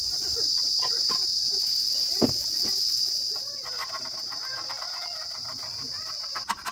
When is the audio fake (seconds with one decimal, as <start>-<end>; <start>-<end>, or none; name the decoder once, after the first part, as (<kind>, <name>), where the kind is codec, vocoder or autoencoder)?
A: 0.0-6.7 (vocoder, BigVGAN v2)